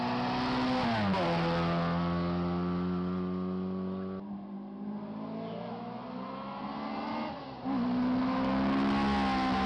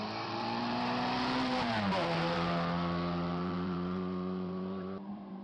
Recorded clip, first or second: first